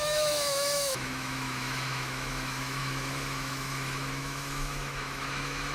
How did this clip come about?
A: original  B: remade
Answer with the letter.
B